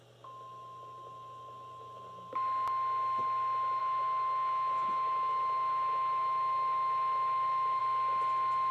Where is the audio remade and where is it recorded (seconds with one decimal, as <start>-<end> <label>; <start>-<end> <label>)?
0.0-3.8 recorded; 3.8-7.8 remade; 7.8-8.7 recorded